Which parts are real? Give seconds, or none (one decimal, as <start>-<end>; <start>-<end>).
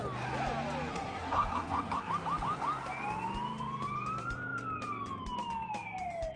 0.0-0.9; 2.1-6.4